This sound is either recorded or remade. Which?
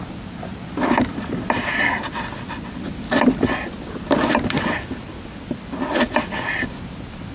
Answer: recorded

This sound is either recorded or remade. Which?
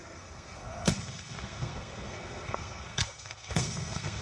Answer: remade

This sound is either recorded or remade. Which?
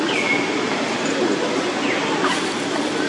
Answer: recorded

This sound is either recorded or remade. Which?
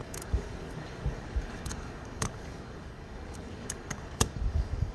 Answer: remade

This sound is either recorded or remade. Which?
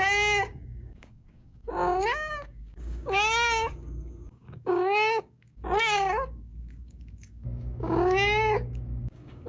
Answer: remade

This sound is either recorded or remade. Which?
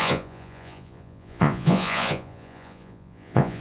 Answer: remade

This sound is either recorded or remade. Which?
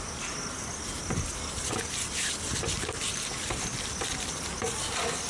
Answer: recorded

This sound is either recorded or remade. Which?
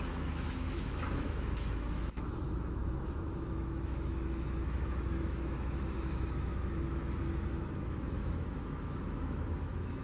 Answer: remade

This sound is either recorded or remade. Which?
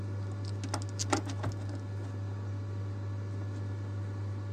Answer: recorded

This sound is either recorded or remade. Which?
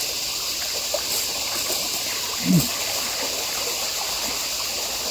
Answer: recorded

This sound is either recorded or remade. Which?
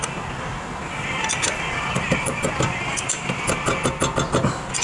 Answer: recorded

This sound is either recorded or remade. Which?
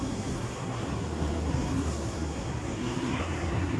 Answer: remade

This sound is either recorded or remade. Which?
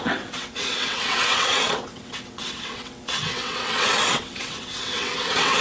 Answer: remade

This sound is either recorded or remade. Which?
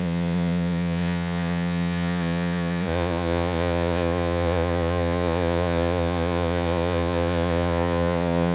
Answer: remade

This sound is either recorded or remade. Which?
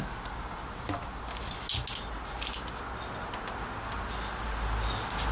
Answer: recorded